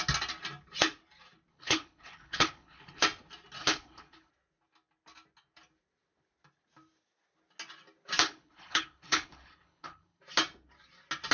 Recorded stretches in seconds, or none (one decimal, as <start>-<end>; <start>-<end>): 0.0-1.5; 3.0-3.6; 4.3-8.2; 10.2-11.3